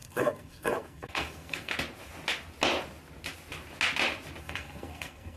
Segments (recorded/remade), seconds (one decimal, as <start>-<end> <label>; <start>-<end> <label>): 0.0-1.7 remade; 1.7-4.4 recorded; 4.4-5.4 remade